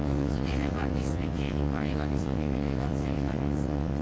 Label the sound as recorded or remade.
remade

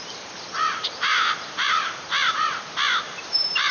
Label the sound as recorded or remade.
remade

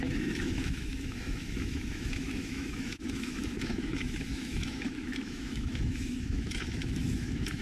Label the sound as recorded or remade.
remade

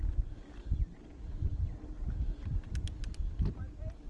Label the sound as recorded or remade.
recorded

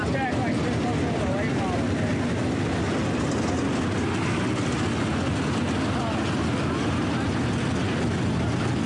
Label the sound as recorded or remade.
recorded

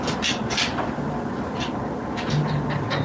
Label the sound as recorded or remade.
recorded